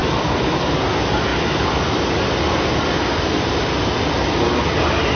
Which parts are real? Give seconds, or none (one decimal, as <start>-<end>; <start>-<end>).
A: 0.9-5.2